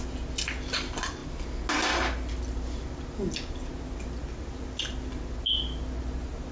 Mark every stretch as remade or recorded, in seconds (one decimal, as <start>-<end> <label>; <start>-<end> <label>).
0.0-6.5 recorded